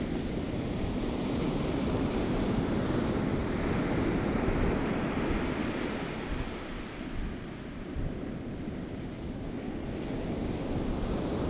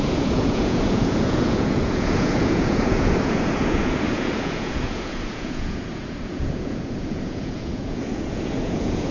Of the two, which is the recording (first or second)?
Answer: first